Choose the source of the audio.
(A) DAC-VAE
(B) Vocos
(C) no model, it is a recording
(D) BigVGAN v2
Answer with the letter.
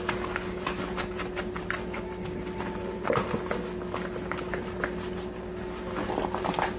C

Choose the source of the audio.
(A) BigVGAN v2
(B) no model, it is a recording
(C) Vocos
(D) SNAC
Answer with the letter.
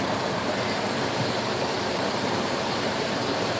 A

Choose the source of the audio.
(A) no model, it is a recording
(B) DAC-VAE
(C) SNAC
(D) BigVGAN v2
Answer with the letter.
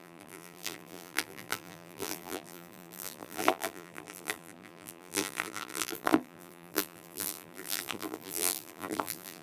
D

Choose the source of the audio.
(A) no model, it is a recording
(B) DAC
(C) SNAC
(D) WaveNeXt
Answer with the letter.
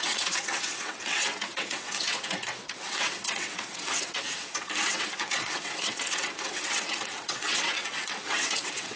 D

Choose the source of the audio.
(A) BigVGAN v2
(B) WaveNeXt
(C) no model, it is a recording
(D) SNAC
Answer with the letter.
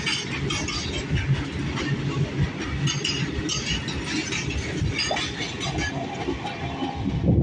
C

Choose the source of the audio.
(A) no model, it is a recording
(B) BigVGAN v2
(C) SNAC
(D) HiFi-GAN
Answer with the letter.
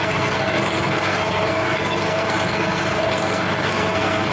C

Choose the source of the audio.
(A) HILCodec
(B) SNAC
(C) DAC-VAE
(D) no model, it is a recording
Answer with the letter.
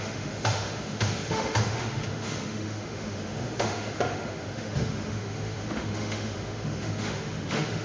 C